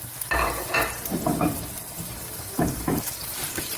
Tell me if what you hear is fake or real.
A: fake